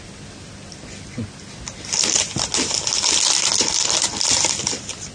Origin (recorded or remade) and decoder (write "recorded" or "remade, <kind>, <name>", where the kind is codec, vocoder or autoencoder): recorded